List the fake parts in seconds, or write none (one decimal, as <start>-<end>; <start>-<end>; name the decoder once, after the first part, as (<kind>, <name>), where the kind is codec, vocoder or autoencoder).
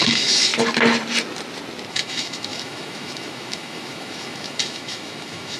0.0-0.5 (autoencoder, DAC-VAE); 1.9-5.6